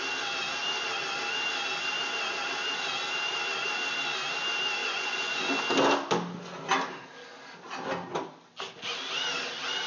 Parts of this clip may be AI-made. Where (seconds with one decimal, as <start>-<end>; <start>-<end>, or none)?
4.8-5.5